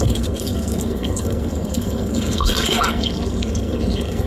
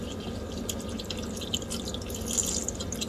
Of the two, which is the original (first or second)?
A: second